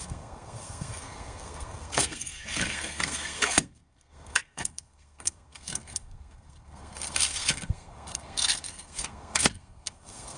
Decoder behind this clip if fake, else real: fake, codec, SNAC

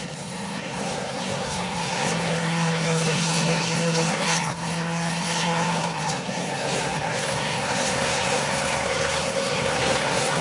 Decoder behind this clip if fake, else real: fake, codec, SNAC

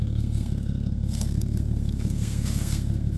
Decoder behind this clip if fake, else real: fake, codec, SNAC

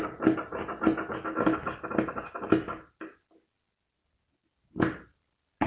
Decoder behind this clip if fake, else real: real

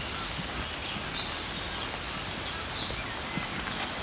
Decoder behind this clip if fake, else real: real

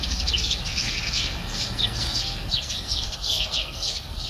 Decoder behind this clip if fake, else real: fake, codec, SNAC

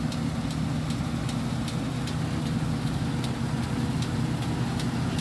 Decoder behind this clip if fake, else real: real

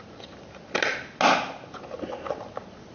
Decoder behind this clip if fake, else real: real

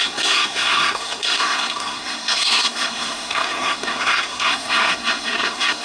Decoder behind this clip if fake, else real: fake, codec, SNAC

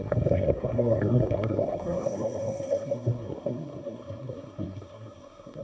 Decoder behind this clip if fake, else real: fake, codec, SNAC